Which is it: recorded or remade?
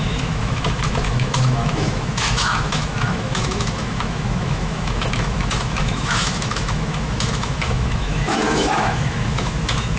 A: remade